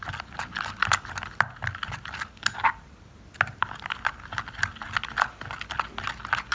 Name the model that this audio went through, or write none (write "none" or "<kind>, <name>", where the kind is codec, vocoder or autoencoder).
none